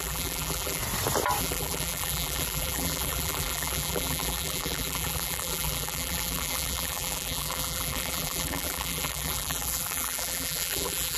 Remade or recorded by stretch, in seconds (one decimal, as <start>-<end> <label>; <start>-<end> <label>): 0.0-0.8 remade; 0.8-1.4 recorded; 1.4-11.2 remade